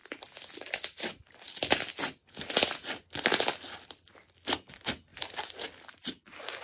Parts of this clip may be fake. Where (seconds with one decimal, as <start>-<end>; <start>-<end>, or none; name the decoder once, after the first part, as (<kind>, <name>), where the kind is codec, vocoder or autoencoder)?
none